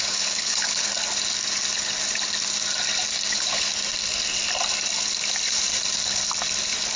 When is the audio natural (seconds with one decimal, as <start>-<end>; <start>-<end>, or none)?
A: 0.9-3.3; 3.7-7.0